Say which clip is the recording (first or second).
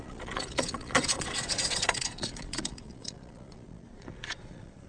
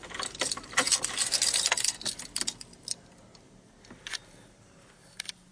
second